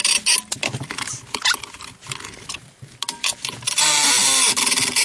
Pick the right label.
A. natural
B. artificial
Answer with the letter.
A